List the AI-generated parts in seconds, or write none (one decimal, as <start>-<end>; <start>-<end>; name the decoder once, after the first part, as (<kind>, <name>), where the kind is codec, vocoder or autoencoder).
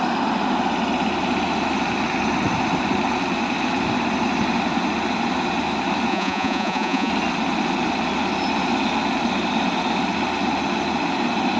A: 6.1-7.1 (vocoder, Vocos)